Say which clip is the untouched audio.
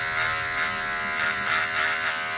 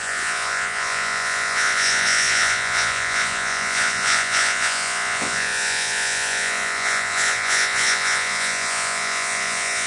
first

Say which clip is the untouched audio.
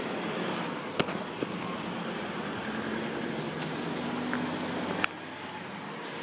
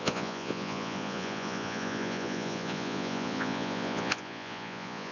first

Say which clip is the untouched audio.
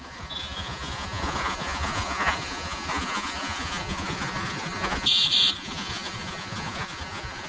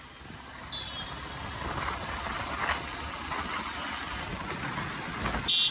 second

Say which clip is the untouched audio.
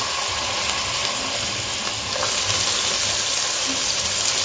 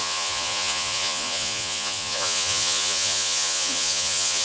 first